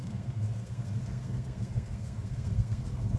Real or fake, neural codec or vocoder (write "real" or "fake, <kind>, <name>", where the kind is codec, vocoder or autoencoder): fake, codec, SNAC